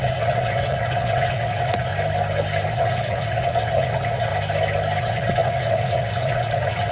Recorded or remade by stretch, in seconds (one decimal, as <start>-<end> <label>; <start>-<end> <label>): 0.0-1.9 remade; 1.9-2.7 recorded; 2.7-4.3 remade; 4.3-5.0 recorded; 5.0-6.9 remade